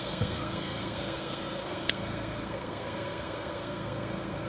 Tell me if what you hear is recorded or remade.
remade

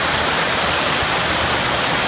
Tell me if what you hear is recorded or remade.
recorded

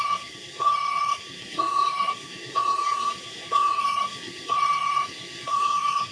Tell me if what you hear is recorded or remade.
remade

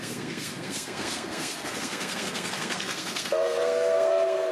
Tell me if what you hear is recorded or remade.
remade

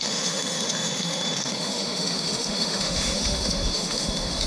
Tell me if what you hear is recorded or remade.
remade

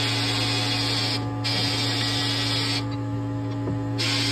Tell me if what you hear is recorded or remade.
recorded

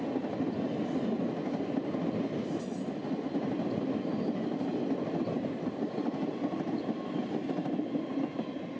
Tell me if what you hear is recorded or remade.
recorded